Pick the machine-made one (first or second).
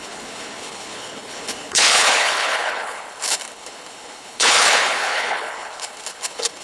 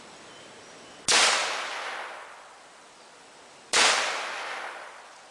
first